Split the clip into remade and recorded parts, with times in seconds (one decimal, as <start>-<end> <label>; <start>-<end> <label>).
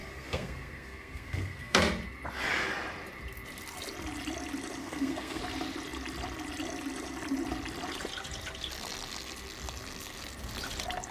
0.0-1.8 remade; 1.8-4.8 recorded; 4.8-5.4 remade; 5.4-11.1 recorded